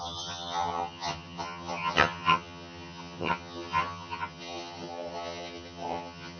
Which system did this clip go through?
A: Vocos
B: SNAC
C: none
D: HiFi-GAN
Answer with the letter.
D